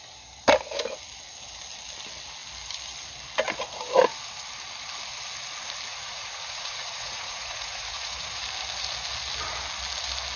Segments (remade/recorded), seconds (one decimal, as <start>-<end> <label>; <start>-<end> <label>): 0.0-5.9 recorded; 5.9-8.4 remade; 8.4-10.4 recorded